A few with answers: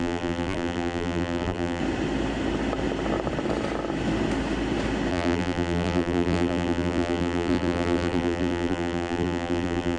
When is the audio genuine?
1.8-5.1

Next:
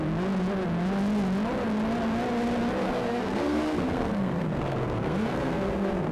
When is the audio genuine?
0.0-2.8